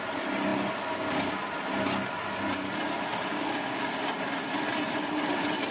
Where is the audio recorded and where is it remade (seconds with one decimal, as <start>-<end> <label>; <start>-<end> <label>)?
0.0-3.3 recorded; 3.3-3.9 remade; 3.9-5.7 recorded